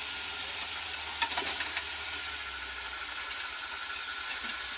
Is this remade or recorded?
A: recorded